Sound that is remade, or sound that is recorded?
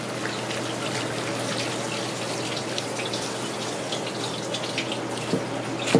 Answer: recorded